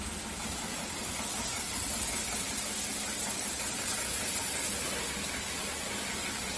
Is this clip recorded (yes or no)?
yes